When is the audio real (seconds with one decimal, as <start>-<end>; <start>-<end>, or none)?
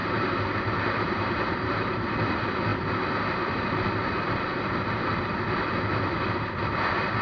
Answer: 2.0-7.2